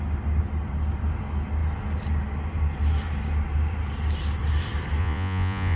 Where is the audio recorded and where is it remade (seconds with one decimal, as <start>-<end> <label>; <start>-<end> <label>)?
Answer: 0.0-5.0 recorded; 5.0-5.8 remade